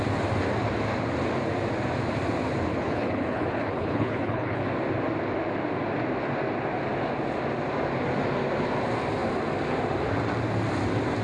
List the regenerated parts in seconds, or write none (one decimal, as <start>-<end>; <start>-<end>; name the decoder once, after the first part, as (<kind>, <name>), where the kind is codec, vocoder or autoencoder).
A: 2.7-4.6 (codec, HILCodec)